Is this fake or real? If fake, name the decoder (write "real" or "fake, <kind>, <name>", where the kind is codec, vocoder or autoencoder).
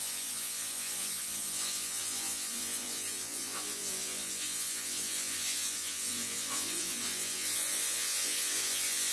fake, vocoder, Vocos